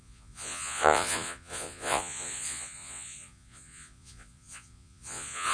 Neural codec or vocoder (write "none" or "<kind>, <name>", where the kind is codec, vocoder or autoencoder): vocoder, Vocos